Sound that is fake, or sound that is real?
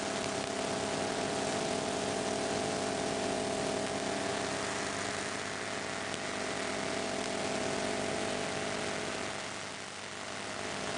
real